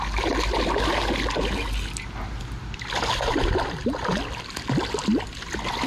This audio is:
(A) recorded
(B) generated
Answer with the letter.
A